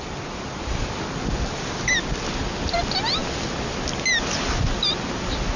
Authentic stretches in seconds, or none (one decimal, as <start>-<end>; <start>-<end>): 0.0-5.6